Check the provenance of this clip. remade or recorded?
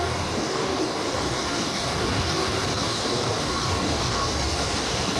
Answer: remade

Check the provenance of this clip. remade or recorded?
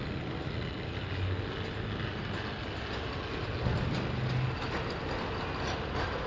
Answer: recorded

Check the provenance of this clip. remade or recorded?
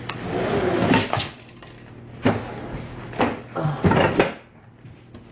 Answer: recorded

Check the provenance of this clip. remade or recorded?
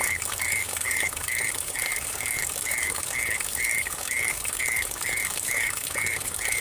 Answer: remade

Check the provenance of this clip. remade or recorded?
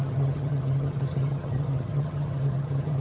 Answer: remade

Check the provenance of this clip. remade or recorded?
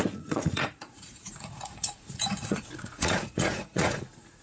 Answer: remade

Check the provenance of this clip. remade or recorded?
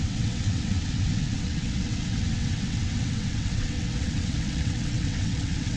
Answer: remade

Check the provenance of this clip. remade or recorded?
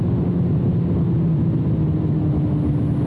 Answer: recorded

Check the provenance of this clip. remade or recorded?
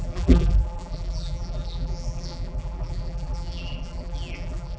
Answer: remade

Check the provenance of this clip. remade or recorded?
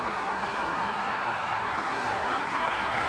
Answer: remade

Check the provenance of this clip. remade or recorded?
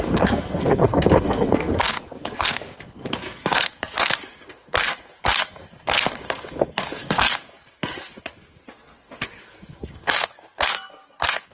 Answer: remade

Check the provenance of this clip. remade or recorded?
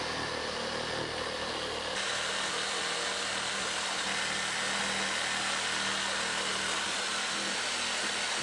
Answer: recorded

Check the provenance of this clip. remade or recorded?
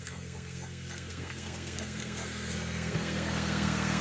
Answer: remade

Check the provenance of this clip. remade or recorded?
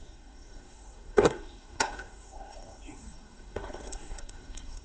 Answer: remade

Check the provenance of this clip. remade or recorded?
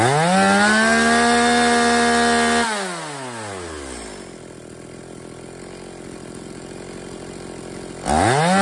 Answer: recorded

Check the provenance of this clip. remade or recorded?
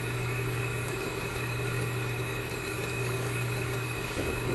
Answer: remade